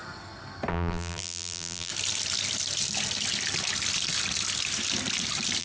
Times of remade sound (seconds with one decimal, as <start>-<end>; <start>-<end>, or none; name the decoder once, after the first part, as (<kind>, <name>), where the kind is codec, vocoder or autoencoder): 0.7-1.9 (vocoder, BigVGAN v2)